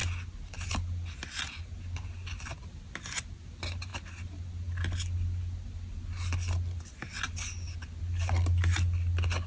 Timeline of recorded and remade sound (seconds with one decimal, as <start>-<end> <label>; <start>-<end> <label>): 0.0-9.5 recorded